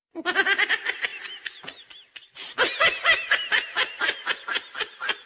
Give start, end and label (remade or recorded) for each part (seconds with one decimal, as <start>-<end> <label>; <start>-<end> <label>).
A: 0.0-5.3 recorded